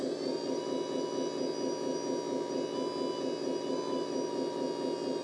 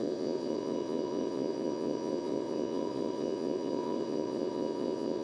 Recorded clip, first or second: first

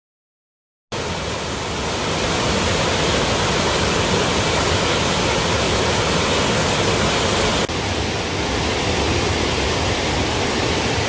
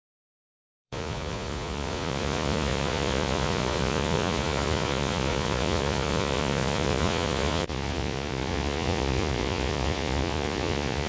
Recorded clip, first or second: first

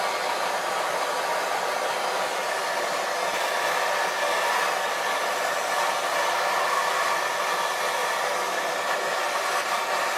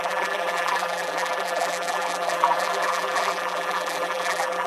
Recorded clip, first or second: first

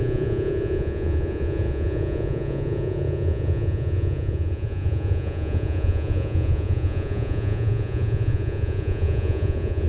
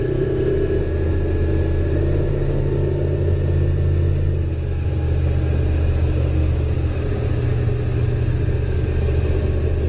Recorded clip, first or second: second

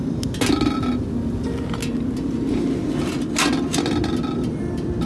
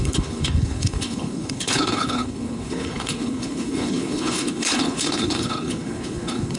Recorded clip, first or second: first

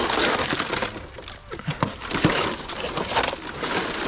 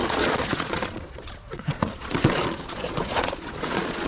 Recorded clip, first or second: first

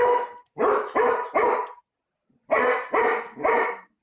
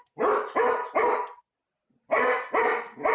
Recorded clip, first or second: second